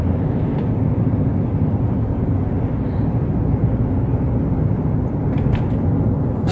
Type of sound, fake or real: real